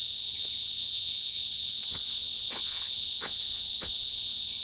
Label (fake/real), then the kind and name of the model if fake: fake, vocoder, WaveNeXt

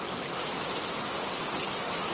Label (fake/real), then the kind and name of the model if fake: real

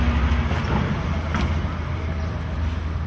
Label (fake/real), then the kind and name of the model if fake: real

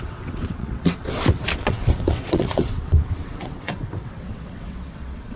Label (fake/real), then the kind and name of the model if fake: fake, vocoder, WaveNeXt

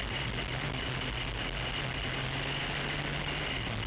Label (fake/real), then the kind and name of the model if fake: real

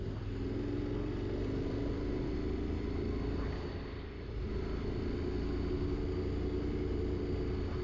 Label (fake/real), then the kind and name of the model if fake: real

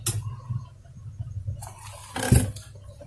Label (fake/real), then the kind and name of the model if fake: real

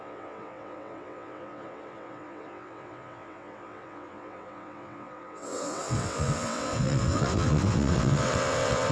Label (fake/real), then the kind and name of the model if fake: fake, vocoder, WaveNeXt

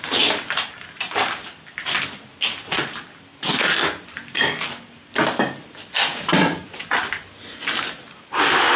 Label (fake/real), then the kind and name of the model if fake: real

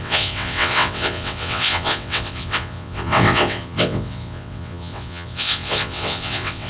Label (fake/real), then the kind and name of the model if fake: fake, vocoder, WaveNeXt